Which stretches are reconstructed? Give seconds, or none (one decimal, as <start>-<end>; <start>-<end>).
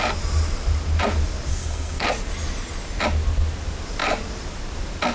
1.5-2.1